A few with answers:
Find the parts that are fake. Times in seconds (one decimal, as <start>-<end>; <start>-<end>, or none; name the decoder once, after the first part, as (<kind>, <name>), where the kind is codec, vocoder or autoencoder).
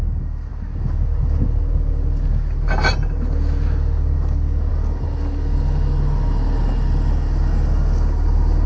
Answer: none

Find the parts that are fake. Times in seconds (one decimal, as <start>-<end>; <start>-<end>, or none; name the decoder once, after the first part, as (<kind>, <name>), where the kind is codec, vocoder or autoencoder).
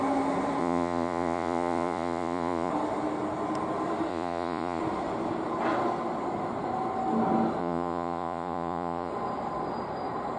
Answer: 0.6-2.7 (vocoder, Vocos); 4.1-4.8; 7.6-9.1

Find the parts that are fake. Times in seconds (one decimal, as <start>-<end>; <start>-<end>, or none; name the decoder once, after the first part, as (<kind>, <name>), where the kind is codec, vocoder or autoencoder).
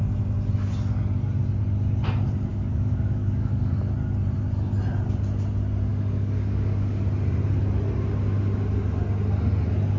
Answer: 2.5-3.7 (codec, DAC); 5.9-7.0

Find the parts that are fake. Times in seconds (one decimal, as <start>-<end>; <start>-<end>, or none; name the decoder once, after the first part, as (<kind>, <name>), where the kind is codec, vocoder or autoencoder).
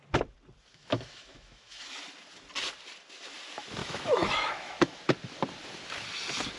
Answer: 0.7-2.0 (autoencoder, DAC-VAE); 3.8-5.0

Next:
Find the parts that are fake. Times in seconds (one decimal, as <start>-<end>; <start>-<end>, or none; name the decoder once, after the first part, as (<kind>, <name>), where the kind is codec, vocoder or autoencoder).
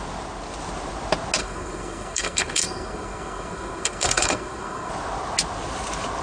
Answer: 1.4-4.9 (codec, SNAC)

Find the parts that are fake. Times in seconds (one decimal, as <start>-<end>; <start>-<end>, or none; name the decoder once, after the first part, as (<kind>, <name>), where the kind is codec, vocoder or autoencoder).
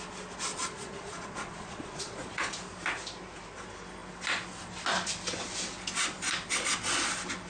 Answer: 0.5-2.5 (vocoder, Vocos)